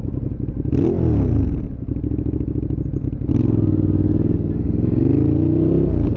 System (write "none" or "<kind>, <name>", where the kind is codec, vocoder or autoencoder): none